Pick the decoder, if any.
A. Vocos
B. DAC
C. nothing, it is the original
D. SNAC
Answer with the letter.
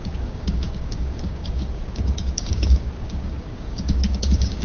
B